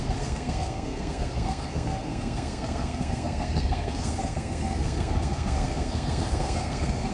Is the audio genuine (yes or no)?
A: no